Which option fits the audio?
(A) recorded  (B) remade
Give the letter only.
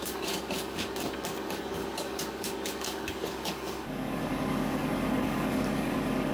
B